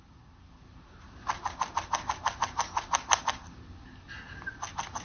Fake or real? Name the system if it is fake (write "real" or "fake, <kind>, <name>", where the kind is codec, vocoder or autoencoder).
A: real